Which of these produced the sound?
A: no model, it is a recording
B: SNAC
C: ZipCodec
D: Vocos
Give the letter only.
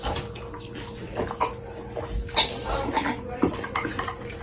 A